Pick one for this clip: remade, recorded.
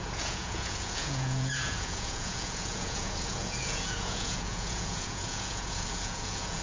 remade